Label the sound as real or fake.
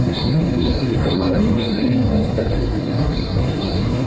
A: fake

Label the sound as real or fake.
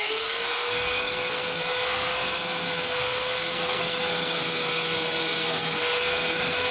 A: fake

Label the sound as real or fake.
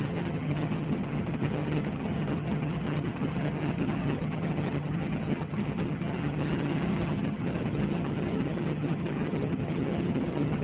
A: fake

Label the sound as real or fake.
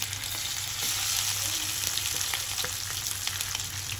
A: real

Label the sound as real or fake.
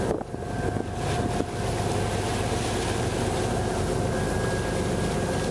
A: real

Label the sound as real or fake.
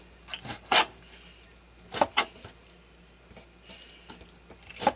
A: real